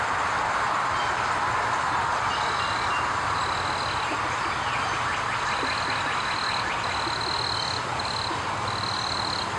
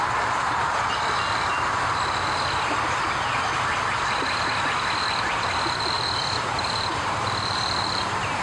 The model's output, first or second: second